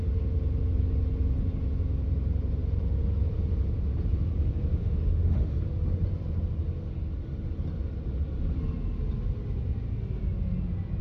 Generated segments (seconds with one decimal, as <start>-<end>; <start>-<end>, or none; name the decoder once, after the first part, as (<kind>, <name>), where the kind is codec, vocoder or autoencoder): 4.8-5.6 (autoencoder, DAC-VAE)